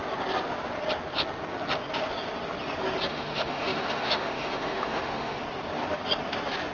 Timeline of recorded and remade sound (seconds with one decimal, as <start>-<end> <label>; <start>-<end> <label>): 0.0-3.1 recorded; 3.1-5.4 remade; 5.4-6.7 recorded